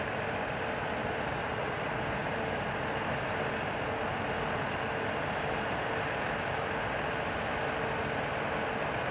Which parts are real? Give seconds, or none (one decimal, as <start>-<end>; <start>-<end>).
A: 0.0-1.4; 1.9-9.1